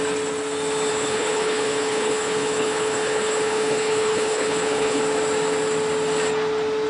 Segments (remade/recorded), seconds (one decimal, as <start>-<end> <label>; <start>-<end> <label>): 0.0-0.9 recorded; 0.9-5.0 remade; 5.0-6.9 recorded